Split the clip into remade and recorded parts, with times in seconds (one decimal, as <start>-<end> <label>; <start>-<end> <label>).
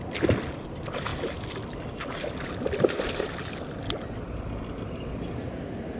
0.0-6.0 recorded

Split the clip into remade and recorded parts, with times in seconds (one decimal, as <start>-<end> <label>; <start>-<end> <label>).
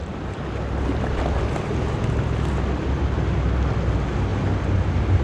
0.0-5.2 recorded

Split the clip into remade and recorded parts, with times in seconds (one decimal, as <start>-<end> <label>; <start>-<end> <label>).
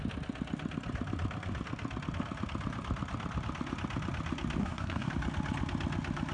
0.0-4.6 recorded; 4.6-5.1 remade; 5.1-6.3 recorded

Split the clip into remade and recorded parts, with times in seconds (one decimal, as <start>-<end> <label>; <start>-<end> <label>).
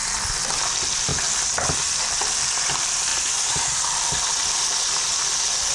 0.0-5.7 recorded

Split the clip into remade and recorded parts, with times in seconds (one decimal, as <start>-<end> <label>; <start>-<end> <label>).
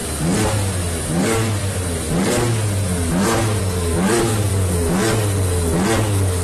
0.0-1.0 recorded; 1.0-1.6 remade; 1.6-3.6 recorded; 3.6-4.5 remade; 4.5-6.0 recorded; 6.0-6.4 remade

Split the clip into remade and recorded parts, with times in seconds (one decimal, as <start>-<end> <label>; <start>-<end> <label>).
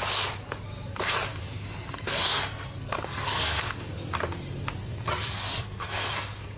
0.0-1.3 recorded; 1.3-3.9 remade; 3.9-4.8 recorded; 4.8-6.6 remade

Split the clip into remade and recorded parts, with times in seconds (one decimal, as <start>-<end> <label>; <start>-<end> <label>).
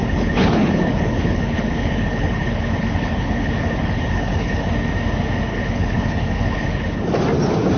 0.0-4.7 remade; 4.7-5.5 recorded; 5.5-7.0 remade; 7.0-7.8 recorded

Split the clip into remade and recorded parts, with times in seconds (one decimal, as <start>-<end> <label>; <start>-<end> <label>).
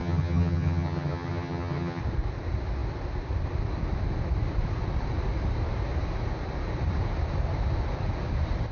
0.0-2.0 remade; 2.0-8.7 recorded